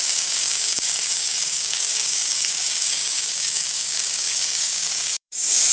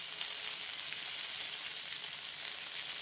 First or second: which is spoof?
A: first